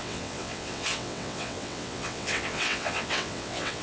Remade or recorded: remade